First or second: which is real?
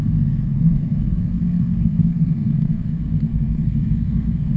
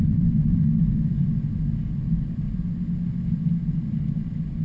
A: second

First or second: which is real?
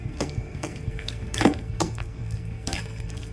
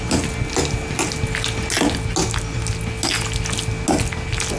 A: second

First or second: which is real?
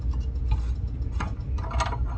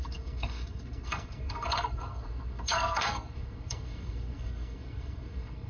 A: first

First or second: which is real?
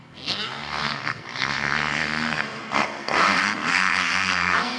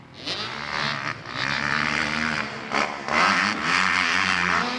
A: second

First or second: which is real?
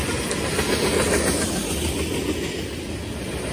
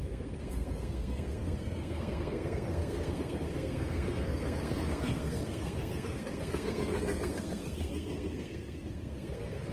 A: first